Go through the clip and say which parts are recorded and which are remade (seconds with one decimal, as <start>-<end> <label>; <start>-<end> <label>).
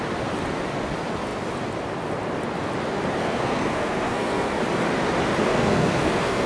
0.0-3.2 recorded; 3.2-4.6 remade; 4.6-5.5 recorded; 5.5-6.5 remade